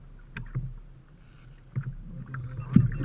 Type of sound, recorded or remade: recorded